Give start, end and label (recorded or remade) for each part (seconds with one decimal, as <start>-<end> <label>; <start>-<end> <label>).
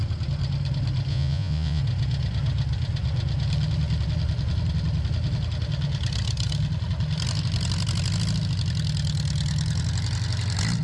0.0-1.1 recorded; 1.1-1.8 remade; 1.8-10.8 recorded